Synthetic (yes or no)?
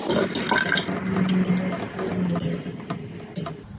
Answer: no